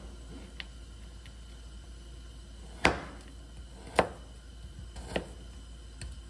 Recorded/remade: recorded